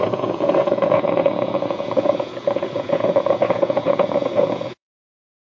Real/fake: fake